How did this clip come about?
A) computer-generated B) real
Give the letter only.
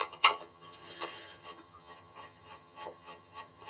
A